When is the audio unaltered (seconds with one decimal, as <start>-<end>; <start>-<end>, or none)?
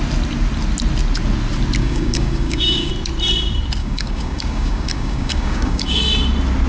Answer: 0.0-1.8; 2.9-3.8; 6.0-6.7